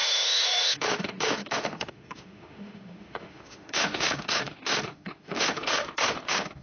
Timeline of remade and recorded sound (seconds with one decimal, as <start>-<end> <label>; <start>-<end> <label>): 0.0-6.6 remade